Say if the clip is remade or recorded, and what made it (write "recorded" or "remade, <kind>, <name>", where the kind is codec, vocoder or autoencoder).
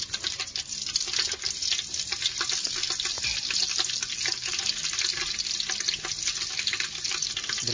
recorded